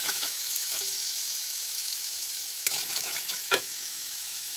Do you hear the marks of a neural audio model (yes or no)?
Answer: yes